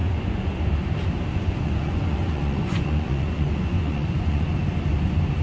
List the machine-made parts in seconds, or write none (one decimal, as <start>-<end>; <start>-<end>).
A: 0.0-0.5; 1.3-4.5